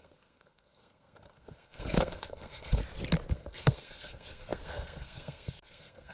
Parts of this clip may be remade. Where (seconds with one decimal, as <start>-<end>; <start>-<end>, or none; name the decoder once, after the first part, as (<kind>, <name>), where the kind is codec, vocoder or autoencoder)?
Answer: 0.0-2.8 (codec, SNAC); 3.3-6.1